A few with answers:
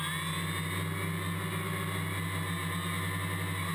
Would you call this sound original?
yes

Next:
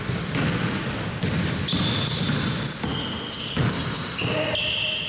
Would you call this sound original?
yes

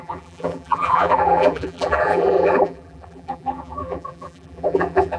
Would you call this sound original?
no